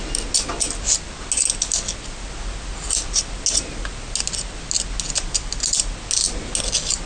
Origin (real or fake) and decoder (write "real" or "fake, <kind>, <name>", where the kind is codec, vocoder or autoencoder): real